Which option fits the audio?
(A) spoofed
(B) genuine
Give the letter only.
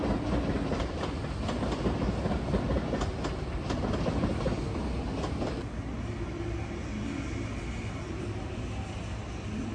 B